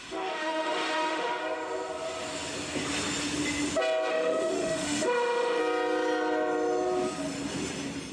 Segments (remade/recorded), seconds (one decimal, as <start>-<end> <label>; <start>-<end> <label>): 0.0-1.4 remade; 1.4-4.1 recorded; 4.1-5.6 remade; 5.6-8.1 recorded